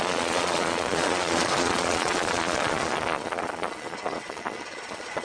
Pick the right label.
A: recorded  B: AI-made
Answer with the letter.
B